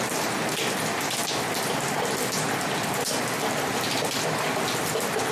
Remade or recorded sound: recorded